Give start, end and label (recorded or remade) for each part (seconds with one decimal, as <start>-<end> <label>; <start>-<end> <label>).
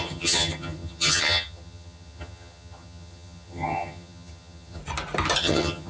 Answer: 0.0-4.8 remade; 4.8-5.4 recorded; 5.4-5.9 remade